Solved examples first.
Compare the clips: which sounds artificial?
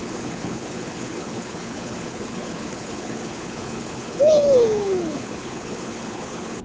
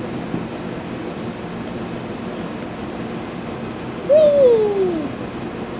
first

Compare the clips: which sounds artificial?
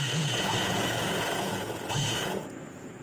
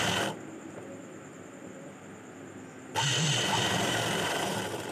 first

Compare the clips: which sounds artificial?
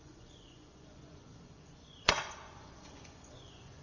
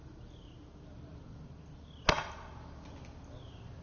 first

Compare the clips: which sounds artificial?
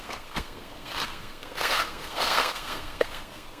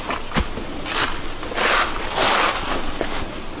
first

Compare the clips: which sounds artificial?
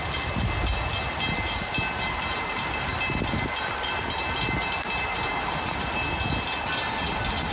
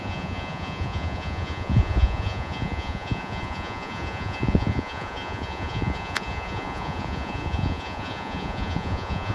second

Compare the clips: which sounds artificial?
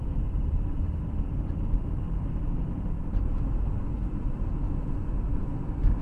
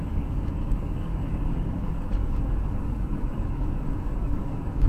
second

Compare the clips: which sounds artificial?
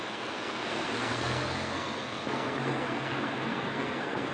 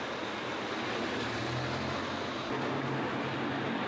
first